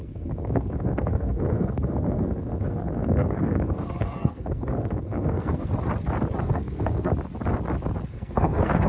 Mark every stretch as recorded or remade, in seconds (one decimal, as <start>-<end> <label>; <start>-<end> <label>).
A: 0.0-5.7 remade; 5.7-6.4 recorded; 6.4-7.1 remade; 7.1-8.1 recorded; 8.1-8.9 remade